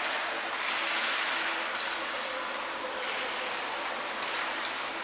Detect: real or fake real